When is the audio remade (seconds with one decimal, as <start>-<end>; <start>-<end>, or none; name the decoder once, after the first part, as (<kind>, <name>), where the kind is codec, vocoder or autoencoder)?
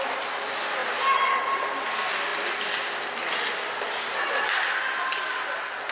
none